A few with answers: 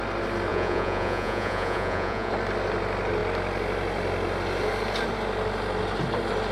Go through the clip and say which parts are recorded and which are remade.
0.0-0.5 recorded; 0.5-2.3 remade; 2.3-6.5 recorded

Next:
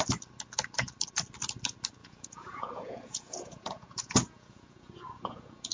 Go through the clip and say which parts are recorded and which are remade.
0.0-2.0 recorded; 2.0-5.7 remade